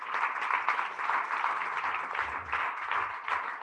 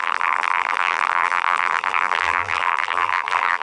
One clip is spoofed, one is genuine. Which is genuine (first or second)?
first